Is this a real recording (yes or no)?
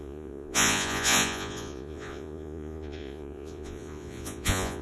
no